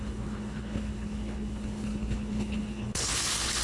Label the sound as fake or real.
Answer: fake